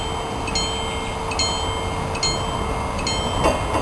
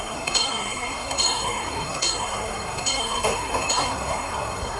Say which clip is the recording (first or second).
first